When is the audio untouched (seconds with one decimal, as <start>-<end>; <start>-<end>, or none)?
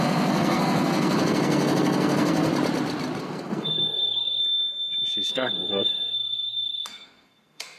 2.5-3.2; 4.4-5.3